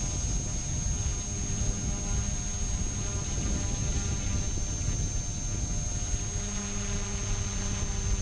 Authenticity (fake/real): real